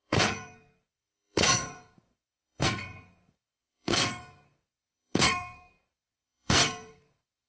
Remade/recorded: remade